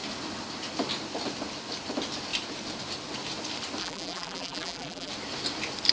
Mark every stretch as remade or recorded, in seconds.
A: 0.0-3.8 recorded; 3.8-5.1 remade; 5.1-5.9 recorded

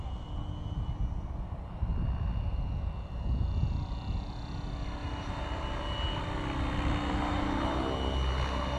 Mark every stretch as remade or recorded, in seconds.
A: 0.0-8.8 recorded

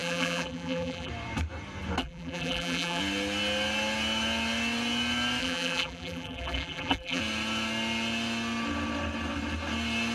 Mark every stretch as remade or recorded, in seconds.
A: 0.0-1.1 remade; 1.1-2.0 recorded; 2.0-3.0 remade; 3.0-5.4 recorded; 5.4-7.2 remade; 7.2-10.1 recorded

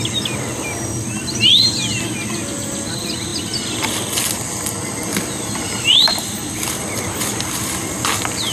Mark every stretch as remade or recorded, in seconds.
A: 0.0-5.1 recorded; 5.1-7.9 remade; 7.9-8.5 recorded

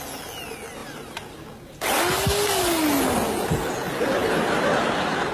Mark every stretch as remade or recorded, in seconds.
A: 0.0-0.8 recorded; 0.8-2.0 remade; 2.0-4.2 recorded; 4.2-5.3 remade

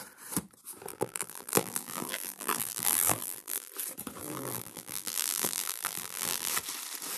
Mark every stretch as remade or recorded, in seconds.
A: 0.0-0.9 recorded; 0.9-3.7 remade; 3.7-4.2 recorded; 4.2-6.5 remade; 6.5-7.2 recorded

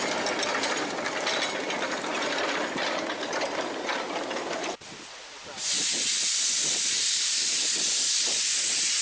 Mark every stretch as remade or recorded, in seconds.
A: 0.0-9.0 recorded